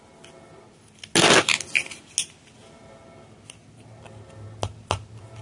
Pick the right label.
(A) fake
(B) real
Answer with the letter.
B